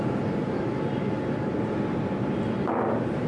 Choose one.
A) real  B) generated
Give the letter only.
A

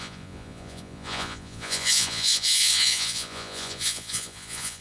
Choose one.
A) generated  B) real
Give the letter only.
A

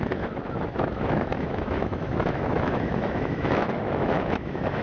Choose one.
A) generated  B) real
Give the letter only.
A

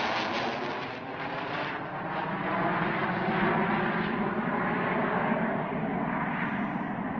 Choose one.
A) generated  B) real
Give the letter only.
B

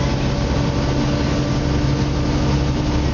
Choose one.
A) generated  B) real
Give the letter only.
B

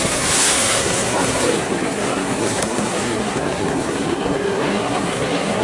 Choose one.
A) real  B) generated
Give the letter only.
B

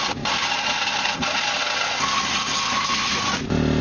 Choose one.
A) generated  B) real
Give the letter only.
B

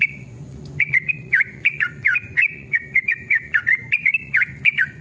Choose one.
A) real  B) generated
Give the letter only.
B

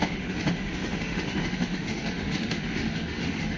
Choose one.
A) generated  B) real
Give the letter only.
A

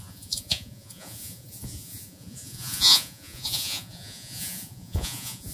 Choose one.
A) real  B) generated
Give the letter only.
B